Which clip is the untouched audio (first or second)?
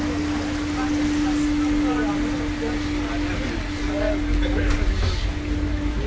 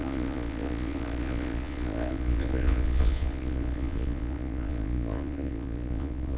first